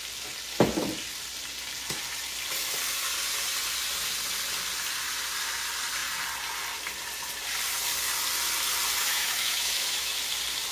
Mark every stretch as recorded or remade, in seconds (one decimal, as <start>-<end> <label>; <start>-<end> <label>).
0.0-9.0 recorded; 9.0-10.1 remade; 10.1-10.7 recorded